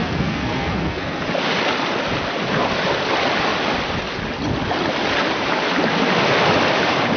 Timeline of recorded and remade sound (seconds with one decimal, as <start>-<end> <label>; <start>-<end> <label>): 0.0-1.2 remade; 1.2-7.2 recorded